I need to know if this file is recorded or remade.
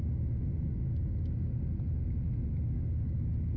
recorded